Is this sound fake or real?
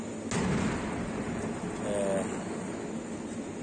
real